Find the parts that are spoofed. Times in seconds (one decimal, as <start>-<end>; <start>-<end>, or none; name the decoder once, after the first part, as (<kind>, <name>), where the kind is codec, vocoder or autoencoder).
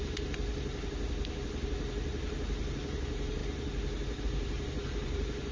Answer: 0.0-0.5 (vocoder, BigVGAN v2); 2.9-3.4; 4.2-5.5